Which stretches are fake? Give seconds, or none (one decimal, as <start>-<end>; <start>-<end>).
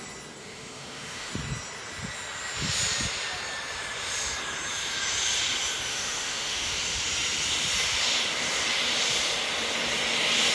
0.4-1.3; 5.9-6.7